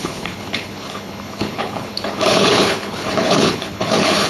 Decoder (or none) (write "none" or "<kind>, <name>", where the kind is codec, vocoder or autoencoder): codec, HILCodec